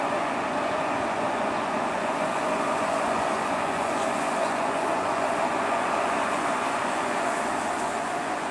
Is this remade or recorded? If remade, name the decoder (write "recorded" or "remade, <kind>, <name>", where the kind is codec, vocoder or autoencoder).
remade, vocoder, Vocos